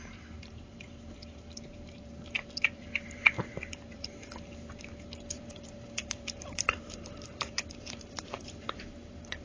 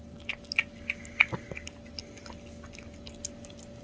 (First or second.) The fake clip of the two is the first